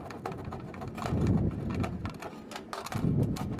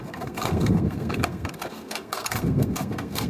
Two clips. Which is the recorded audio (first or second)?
first